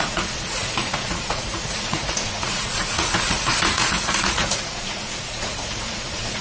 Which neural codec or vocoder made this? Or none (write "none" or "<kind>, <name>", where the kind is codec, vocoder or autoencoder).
vocoder, Vocos